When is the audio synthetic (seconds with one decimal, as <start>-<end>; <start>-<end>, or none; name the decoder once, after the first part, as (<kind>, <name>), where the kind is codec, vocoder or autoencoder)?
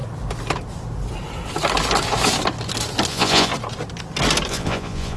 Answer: 3.1-3.5 (vocoder, Vocos); 4.5-5.2